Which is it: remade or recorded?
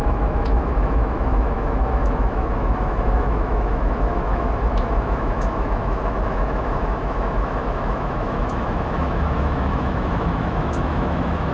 remade